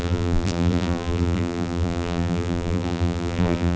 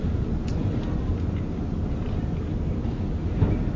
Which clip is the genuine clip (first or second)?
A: second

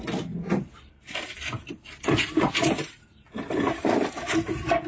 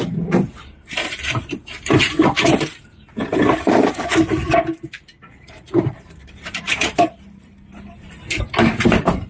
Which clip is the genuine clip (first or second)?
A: first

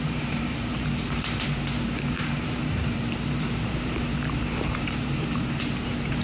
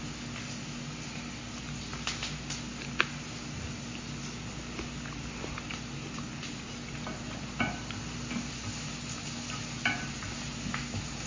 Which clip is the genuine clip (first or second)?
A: second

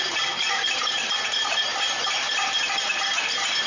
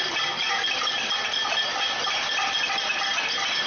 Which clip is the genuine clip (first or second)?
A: second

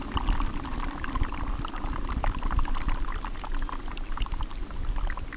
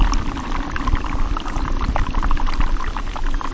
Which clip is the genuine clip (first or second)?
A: second